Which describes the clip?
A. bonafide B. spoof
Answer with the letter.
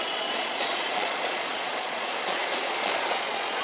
B